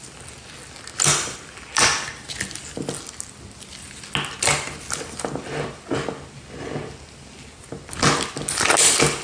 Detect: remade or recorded recorded